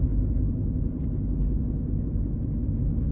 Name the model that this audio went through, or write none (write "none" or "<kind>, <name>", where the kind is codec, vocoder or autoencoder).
none